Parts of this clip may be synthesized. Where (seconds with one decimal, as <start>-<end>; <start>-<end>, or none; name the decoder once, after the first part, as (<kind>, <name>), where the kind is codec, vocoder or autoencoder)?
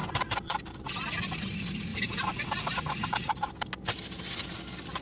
0.0-0.9 (vocoder, BigVGAN v2); 1.9-3.5